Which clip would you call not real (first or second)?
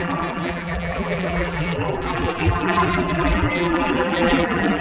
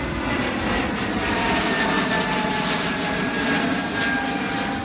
first